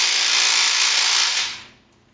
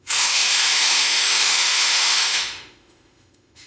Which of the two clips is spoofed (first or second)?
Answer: second